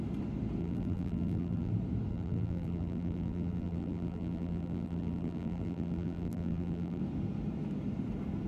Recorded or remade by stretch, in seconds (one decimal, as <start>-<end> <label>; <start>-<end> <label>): 0.0-0.6 recorded; 0.6-1.7 remade; 1.7-2.1 recorded; 2.1-7.0 remade; 7.0-8.5 recorded